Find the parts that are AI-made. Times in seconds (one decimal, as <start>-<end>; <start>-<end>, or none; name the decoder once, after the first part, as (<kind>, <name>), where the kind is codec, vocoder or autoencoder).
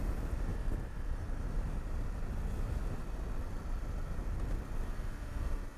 none